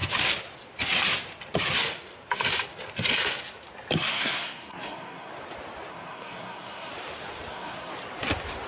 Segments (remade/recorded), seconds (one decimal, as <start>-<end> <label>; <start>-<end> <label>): 0.0-4.1 recorded; 4.1-5.3 remade; 5.3-5.9 recorded; 5.9-6.9 remade; 6.9-7.5 recorded; 7.5-7.9 remade; 7.9-8.7 recorded

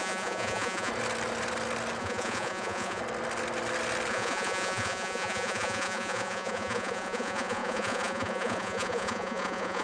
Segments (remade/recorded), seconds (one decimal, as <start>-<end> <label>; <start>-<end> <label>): 0.0-0.9 remade; 0.9-2.0 recorded; 2.0-3.0 remade; 3.0-4.1 recorded; 4.1-9.8 remade

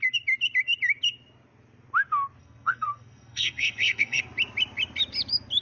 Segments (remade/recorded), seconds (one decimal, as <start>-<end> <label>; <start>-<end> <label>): 0.0-2.4 recorded; 2.4-4.2 remade; 4.2-5.6 recorded

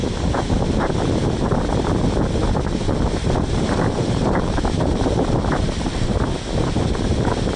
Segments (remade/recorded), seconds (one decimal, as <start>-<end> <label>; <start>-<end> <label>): 0.0-2.4 recorded; 2.4-6.1 remade; 6.1-7.6 recorded

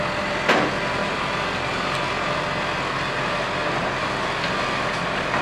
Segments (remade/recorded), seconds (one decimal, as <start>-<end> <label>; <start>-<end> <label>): 0.0-5.4 recorded

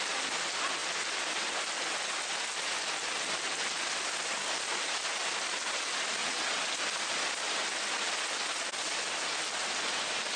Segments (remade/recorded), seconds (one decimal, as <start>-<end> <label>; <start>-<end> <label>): 0.0-6.2 recorded; 6.2-6.7 remade; 6.7-10.4 recorded

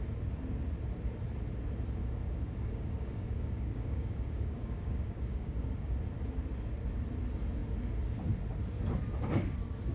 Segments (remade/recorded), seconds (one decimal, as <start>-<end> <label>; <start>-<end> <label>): 0.0-2.0 recorded; 2.0-5.9 remade; 5.9-9.9 recorded

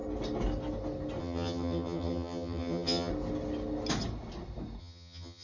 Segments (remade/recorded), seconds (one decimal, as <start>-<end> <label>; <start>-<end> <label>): 0.0-1.2 recorded; 1.2-3.1 remade; 3.1-4.8 recorded; 4.8-5.4 remade